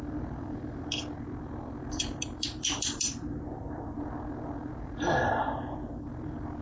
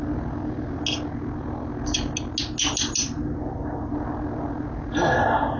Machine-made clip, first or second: first